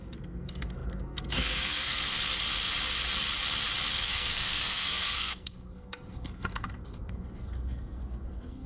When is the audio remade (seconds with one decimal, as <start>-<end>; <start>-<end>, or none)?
0.0-2.1; 3.9-8.7